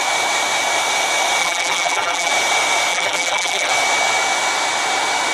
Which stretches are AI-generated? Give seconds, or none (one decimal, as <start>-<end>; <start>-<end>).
1.4-2.3; 2.9-3.7